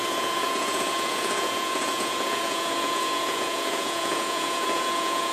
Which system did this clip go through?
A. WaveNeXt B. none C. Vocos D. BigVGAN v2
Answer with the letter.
C